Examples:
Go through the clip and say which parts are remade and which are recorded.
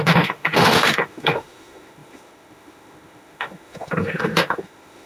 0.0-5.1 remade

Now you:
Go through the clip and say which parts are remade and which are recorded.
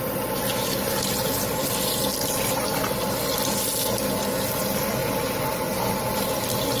0.0-6.8 recorded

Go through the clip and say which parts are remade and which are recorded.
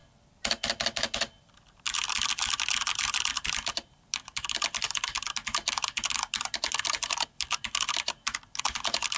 0.0-9.2 recorded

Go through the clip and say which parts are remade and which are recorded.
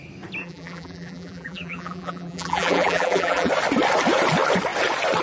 0.0-0.4 recorded; 0.4-3.5 remade; 3.5-5.2 recorded